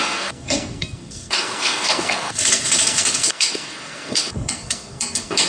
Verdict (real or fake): fake